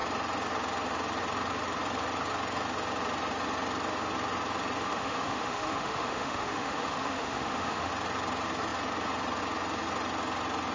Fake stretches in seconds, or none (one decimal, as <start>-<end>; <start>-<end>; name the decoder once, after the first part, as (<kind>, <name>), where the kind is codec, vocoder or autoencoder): 4.9-7.9 (autoencoder, DAC-VAE)